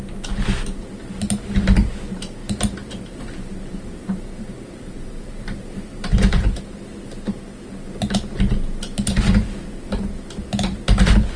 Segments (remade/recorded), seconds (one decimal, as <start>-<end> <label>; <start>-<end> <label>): 0.0-2.4 recorded; 2.4-6.6 remade; 6.6-11.4 recorded